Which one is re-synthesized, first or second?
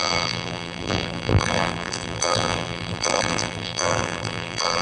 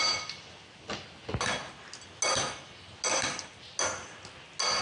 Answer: first